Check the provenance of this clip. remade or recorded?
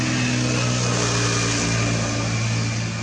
recorded